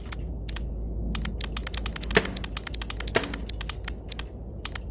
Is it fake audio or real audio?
real